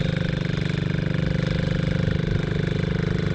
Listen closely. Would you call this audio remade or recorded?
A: recorded